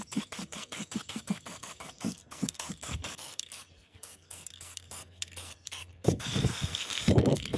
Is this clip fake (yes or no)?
yes